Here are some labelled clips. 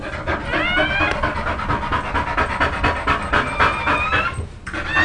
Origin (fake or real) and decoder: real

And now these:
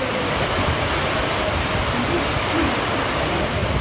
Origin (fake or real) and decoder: real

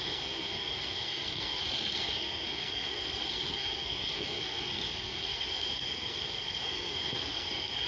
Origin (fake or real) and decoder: fake, codec, SNAC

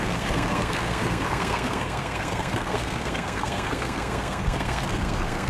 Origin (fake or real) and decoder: fake, codec, SNAC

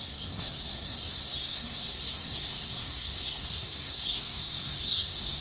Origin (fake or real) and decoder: fake, codec, SNAC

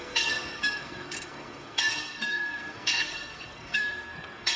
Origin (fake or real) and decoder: fake, codec, SNAC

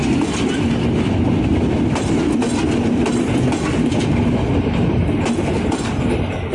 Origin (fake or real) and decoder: real